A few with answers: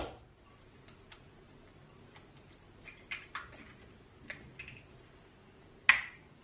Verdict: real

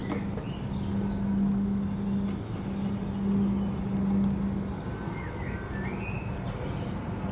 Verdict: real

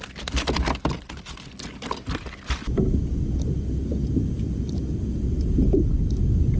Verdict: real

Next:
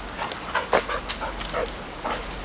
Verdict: real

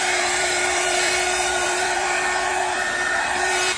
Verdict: fake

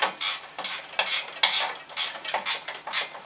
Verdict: real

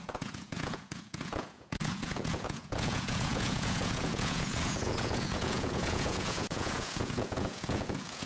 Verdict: fake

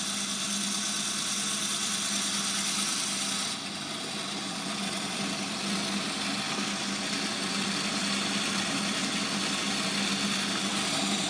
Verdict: real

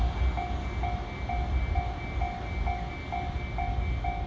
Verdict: real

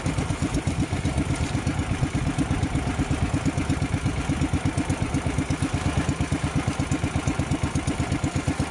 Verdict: real